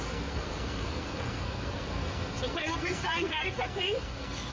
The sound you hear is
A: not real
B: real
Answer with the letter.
A